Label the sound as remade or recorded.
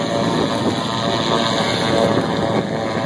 recorded